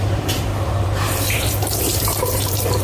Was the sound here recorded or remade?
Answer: remade